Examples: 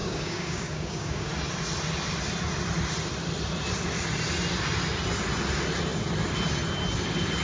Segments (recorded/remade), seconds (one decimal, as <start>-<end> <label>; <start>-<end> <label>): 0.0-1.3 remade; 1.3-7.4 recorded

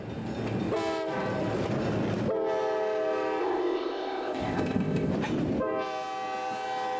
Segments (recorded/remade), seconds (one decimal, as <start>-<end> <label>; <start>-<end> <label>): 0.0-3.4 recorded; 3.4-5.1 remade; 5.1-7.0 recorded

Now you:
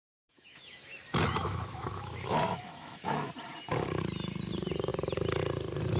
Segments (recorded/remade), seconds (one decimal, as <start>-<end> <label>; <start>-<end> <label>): 0.0-3.3 remade; 3.3-6.0 recorded

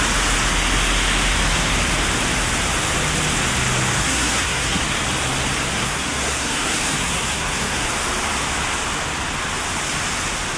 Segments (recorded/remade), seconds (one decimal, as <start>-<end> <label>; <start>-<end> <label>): 0.0-4.0 recorded; 4.0-4.8 remade; 4.8-5.7 recorded; 5.7-7.9 remade; 7.9-10.6 recorded